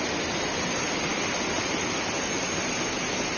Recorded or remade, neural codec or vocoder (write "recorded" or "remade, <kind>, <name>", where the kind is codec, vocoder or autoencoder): recorded